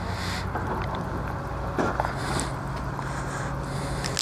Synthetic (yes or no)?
no